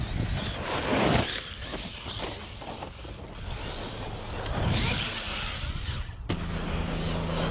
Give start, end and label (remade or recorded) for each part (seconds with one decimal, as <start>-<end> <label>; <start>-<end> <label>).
0.0-7.5 recorded